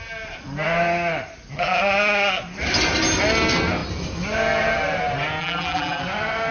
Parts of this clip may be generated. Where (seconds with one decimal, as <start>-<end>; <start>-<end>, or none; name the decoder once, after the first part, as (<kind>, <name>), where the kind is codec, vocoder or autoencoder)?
5.4-6.0 (vocoder, BigVGAN v2)